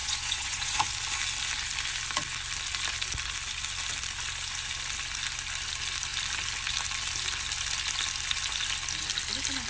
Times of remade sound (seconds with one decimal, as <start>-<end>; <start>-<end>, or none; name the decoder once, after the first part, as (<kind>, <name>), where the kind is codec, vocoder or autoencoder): 0.0-0.9 (vocoder, Vocos)